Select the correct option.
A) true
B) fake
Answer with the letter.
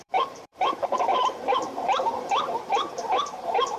B